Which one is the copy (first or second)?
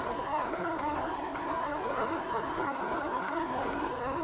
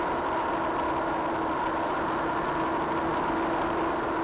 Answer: first